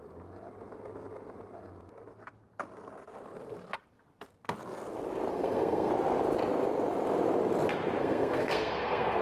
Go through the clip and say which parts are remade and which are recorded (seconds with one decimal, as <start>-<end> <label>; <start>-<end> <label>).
0.0-5.3 recorded; 5.3-5.9 remade; 5.9-8.0 recorded; 8.0-9.2 remade